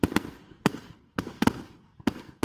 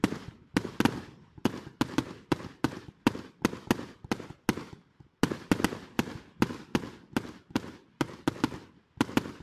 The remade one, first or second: first